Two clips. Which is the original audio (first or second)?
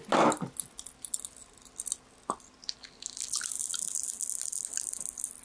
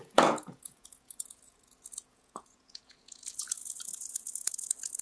first